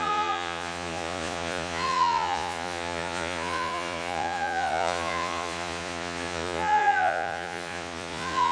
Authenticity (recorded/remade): remade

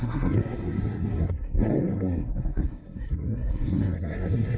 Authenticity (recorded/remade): remade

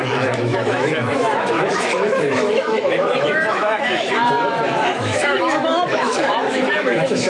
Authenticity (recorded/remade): remade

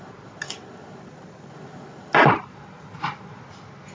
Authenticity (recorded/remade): recorded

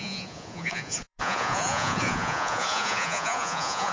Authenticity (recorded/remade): remade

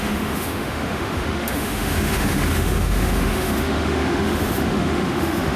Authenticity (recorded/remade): remade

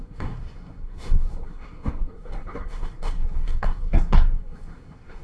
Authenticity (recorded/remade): remade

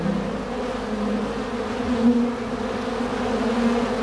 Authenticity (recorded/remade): recorded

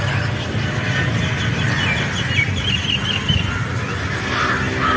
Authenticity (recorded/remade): recorded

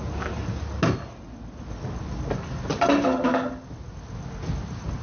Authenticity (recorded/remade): recorded